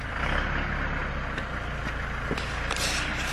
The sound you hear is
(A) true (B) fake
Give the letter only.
A